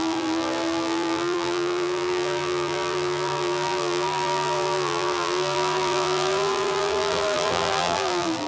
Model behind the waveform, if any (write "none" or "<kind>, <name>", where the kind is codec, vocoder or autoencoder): vocoder, BigVGAN v2